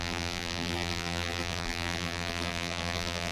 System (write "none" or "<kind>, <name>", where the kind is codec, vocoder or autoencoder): vocoder, BigVGAN v2